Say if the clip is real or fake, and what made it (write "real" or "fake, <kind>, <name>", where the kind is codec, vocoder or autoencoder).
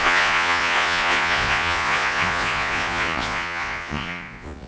fake, vocoder, Vocos